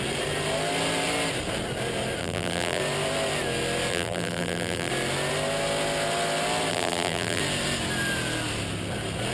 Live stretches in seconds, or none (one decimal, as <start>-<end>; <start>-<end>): 0.0-2.2; 2.8-3.9; 4.9-6.7; 7.4-9.3